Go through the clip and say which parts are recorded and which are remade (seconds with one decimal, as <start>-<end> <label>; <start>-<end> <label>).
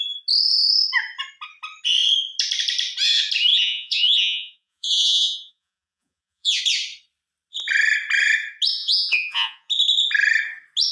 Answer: 0.0-3.5 recorded; 3.5-6.6 remade; 6.6-8.8 recorded; 8.8-9.7 remade; 9.7-10.9 recorded